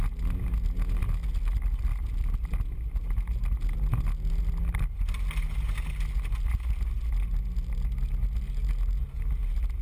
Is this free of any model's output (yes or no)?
yes